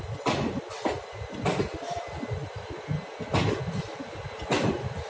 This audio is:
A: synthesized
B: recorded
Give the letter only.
B